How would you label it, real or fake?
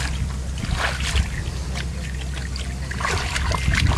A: real